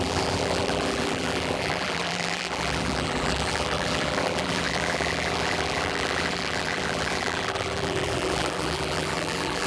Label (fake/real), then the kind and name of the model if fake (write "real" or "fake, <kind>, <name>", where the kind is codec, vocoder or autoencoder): fake, vocoder, BigVGAN v2